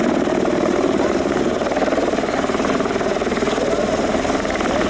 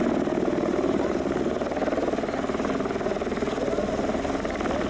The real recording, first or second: second